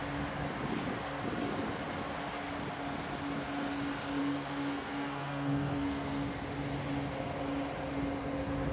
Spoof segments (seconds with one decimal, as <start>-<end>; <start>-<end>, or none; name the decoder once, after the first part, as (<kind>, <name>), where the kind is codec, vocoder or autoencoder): 4.2-6.3 (codec, SNAC)